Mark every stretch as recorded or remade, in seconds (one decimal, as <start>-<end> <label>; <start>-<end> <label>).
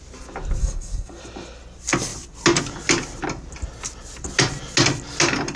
0.0-0.6 recorded; 0.6-1.2 remade; 1.2-5.6 recorded